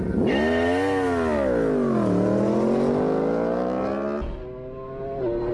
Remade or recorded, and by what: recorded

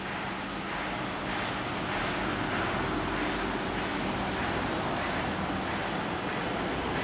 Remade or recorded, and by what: recorded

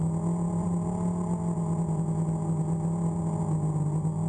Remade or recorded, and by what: recorded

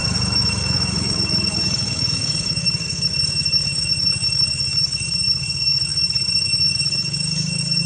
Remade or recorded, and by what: remade, autoencoder, DAC-VAE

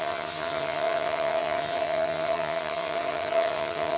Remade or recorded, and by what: remade, vocoder, HiFi-GAN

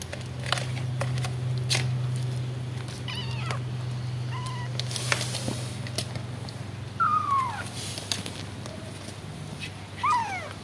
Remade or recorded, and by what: recorded